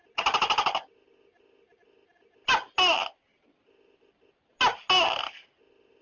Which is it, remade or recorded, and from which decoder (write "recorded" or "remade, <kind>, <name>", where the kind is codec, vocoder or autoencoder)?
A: recorded